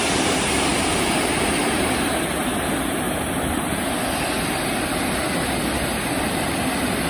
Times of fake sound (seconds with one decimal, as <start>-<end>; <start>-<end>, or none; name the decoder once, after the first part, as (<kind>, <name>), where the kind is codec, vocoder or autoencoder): none